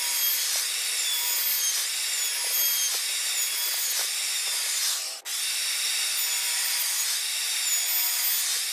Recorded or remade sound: recorded